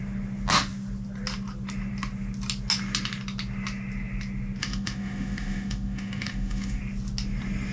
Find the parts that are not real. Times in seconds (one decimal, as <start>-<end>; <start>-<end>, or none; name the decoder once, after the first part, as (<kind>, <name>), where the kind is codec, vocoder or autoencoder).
4.6-6.8 (autoencoder, DAC-VAE)